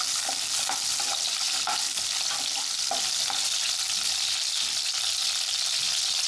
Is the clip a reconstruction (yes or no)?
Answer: no